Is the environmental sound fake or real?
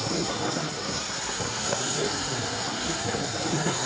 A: fake